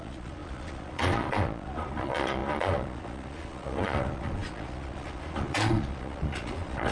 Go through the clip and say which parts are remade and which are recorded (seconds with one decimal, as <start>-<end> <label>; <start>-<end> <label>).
0.0-6.9 remade